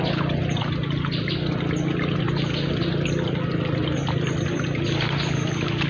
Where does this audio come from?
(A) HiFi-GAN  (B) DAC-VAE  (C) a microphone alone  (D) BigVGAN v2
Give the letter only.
C